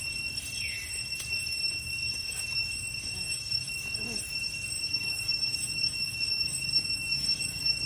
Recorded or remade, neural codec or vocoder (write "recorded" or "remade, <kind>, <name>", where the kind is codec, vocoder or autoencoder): remade, codec, DAC